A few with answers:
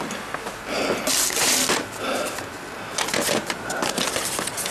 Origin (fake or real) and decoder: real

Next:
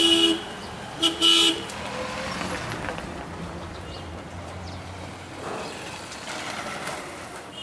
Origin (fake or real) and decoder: real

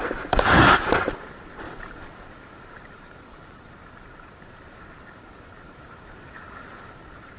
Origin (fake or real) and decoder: fake, vocoder, BigVGAN v2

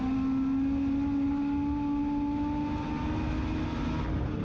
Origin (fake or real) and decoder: real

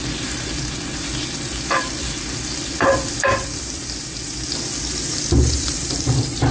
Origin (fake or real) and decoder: fake, vocoder, BigVGAN v2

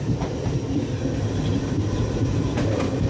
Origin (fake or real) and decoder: fake, vocoder, BigVGAN v2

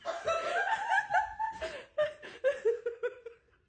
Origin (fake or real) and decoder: fake, vocoder, BigVGAN v2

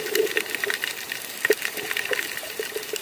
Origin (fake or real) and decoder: fake, vocoder, BigVGAN v2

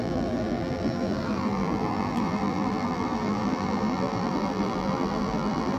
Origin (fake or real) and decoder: fake, vocoder, BigVGAN v2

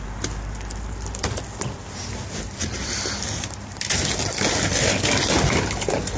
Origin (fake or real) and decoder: real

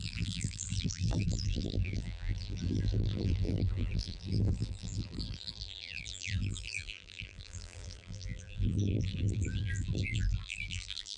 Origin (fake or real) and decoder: fake, vocoder, BigVGAN v2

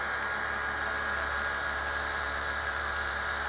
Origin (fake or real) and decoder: fake, vocoder, BigVGAN v2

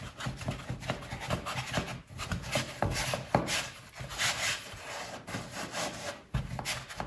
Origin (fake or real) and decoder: real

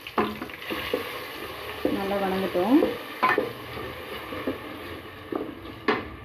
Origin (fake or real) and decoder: real